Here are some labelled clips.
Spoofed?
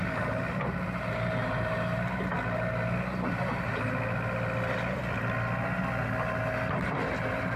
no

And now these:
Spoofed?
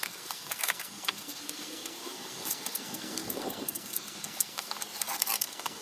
yes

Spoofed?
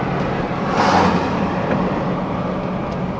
no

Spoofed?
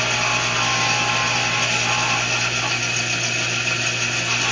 no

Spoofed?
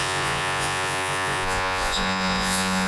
yes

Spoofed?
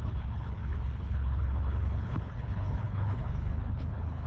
yes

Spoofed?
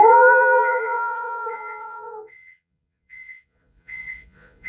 yes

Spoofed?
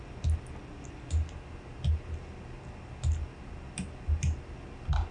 no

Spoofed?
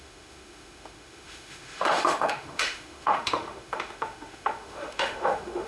yes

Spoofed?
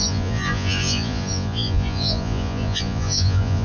yes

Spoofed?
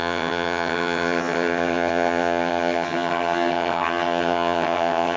yes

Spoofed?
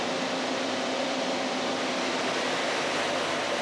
no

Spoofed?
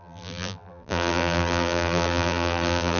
yes